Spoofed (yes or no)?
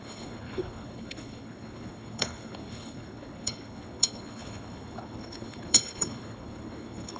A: yes